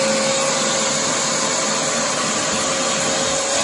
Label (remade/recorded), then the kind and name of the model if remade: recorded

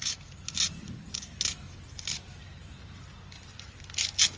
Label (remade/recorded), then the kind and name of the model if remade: recorded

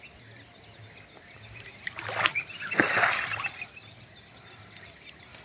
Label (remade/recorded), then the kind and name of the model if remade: recorded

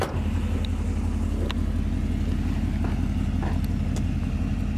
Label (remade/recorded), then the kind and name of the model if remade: recorded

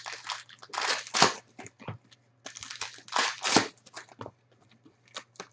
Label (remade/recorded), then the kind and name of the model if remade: recorded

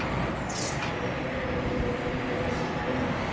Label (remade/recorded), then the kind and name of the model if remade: recorded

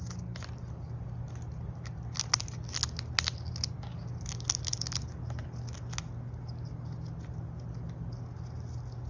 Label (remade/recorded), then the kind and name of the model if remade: recorded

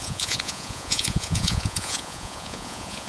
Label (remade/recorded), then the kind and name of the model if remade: remade, vocoder, Vocos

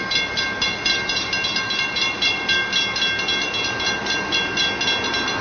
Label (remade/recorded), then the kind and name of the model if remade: recorded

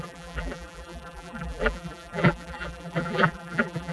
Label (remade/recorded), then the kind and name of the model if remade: remade, vocoder, BigVGAN v2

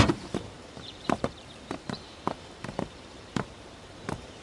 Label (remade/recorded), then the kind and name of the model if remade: remade, vocoder, BigVGAN v2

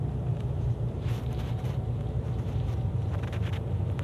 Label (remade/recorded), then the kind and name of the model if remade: remade, vocoder, BigVGAN v2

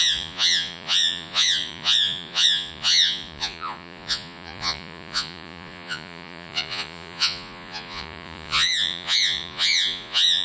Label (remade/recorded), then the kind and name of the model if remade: remade, vocoder, Vocos